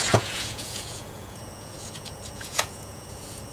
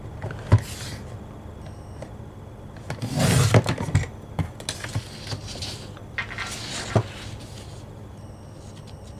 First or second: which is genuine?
second